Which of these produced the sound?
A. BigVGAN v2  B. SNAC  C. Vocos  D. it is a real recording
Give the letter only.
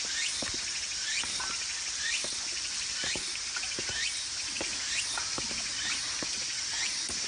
D